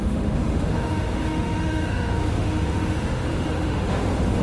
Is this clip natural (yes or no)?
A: no